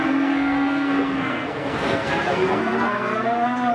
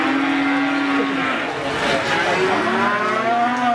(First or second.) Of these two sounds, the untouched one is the second